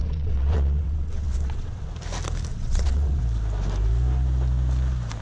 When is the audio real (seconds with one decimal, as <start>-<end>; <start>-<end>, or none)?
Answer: 1.9-2.5; 3.2-5.2